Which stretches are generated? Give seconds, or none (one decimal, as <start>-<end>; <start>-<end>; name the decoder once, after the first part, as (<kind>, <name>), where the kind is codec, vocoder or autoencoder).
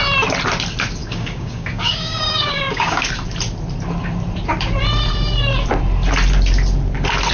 1.0-3.1 (codec, DAC)